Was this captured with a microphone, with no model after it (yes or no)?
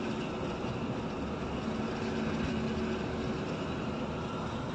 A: yes